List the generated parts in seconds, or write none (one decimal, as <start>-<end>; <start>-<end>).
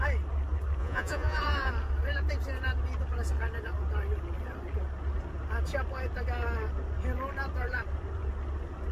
0.8-1.7